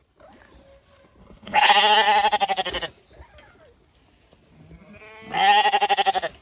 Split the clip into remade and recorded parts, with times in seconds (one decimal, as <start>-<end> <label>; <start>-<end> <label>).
0.0-1.2 recorded; 1.2-1.7 remade; 1.7-6.4 recorded